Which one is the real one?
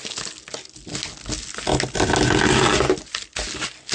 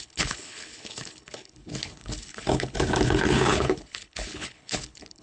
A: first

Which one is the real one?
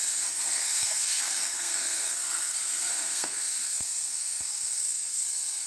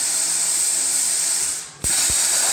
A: second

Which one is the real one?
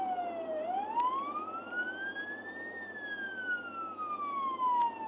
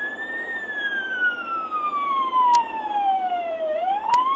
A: first